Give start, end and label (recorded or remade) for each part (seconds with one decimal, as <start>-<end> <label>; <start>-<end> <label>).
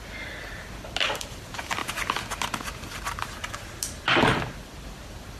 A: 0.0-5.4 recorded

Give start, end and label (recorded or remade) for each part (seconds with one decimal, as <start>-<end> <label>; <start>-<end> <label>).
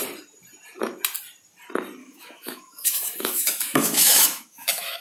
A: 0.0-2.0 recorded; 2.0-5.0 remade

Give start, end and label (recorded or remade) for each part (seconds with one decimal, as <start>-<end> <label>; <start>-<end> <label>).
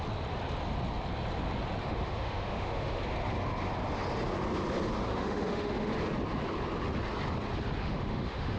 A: 0.0-1.8 recorded; 1.8-3.0 remade; 3.0-5.1 recorded; 5.1-5.9 remade; 5.9-7.8 recorded; 7.8-8.6 remade